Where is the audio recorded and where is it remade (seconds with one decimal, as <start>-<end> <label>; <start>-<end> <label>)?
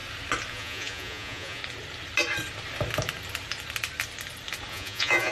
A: 0.0-0.5 recorded; 0.5-1.6 remade; 1.6-4.7 recorded; 4.7-5.3 remade